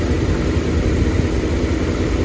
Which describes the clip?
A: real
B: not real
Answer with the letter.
A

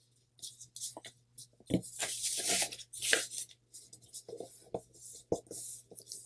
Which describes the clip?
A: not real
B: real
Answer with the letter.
B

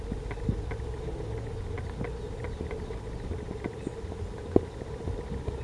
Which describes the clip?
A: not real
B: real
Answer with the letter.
B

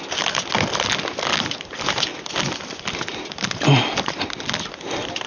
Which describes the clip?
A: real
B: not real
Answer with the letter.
A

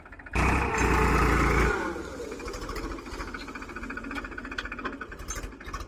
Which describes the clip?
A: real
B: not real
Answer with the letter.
A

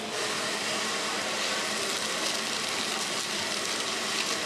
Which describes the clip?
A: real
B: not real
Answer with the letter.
A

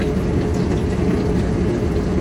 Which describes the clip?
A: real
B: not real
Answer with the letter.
A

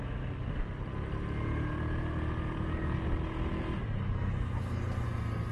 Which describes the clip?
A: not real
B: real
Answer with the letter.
B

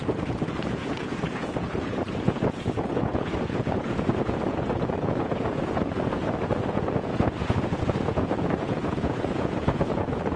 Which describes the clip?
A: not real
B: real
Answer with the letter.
A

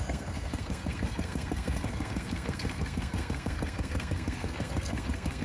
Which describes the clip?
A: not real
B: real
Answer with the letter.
A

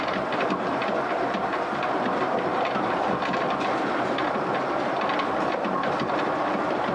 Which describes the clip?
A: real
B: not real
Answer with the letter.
A